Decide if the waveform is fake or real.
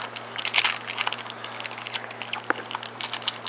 real